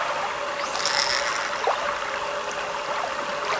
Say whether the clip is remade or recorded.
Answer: recorded